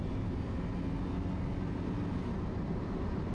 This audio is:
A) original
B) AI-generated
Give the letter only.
A